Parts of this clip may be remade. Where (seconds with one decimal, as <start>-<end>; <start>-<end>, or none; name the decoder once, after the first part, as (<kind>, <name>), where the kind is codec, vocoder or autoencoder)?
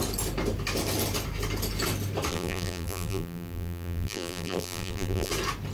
2.3-5.3 (vocoder, BigVGAN v2)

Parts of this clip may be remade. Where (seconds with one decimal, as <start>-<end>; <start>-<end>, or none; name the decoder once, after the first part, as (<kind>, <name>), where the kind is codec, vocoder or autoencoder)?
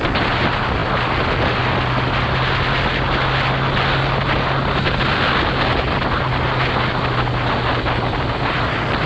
none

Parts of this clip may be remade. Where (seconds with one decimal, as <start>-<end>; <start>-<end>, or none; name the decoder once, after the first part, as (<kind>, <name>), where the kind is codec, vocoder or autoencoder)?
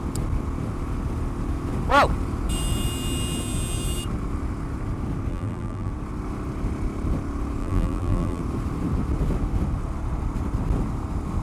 5.3-5.9 (vocoder, BigVGAN v2); 7.6-8.4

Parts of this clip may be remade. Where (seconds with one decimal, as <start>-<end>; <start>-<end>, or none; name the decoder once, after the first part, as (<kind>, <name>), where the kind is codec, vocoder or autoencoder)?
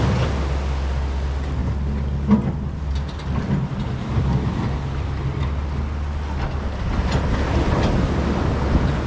none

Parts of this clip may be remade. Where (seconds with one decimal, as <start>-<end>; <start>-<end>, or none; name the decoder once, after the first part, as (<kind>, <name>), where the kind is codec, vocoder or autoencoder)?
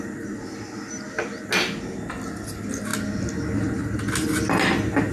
none